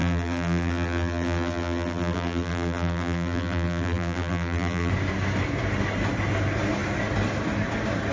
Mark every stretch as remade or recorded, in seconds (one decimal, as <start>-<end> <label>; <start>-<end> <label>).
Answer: 0.0-4.9 remade; 4.9-8.1 recorded